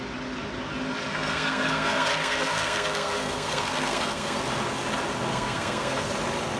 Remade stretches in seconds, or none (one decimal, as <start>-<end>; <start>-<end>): 1.1-4.4; 5.3-6.1